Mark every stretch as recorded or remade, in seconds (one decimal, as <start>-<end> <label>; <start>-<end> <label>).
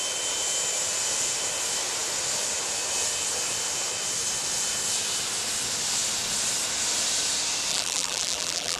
0.0-7.7 recorded; 7.7-8.8 remade